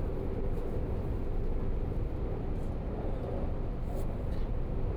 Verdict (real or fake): real